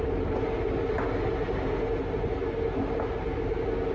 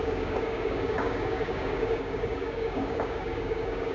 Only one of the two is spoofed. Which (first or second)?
second